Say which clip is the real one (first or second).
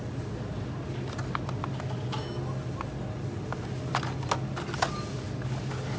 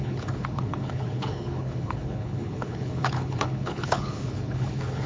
first